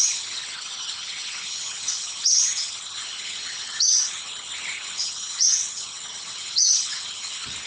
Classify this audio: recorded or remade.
remade